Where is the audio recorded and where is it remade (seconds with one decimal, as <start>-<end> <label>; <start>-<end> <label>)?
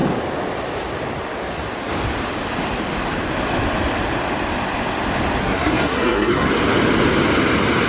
0.0-5.4 recorded; 5.4-6.5 remade; 6.5-7.9 recorded